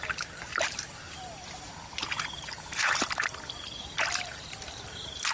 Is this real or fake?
fake